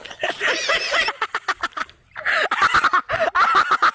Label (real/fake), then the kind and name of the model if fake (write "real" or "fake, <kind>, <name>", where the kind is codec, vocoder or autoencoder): real